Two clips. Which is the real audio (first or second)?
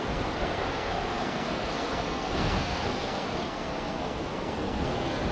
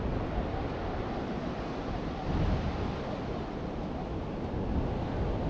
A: second